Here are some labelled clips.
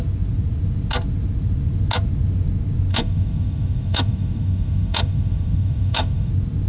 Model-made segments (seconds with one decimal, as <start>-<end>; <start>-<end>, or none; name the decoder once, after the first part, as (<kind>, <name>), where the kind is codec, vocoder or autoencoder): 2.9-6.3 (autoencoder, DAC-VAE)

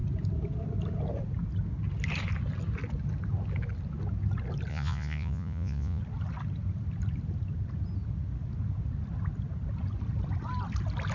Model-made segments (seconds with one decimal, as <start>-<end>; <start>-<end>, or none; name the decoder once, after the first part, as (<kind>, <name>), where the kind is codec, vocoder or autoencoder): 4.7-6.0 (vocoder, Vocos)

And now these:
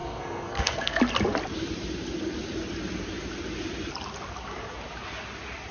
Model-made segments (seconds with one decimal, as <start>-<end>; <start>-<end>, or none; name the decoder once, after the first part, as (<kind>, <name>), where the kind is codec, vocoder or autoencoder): 0.0-1.0 (codec, SNAC)

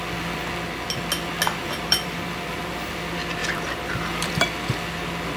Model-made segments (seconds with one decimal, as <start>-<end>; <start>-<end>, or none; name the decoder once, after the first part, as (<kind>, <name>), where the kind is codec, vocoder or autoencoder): 1.6-2.9 (vocoder, BigVGAN v2); 3.4-4.4

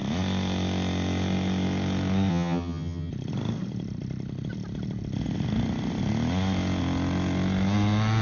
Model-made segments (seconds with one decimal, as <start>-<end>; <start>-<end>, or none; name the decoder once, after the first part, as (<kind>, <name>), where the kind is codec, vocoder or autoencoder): 2.3-3.1 (vocoder, HiFi-GAN)